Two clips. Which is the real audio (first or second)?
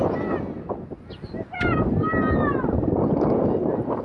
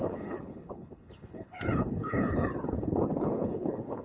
first